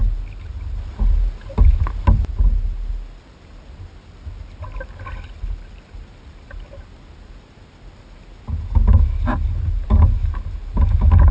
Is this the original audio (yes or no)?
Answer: yes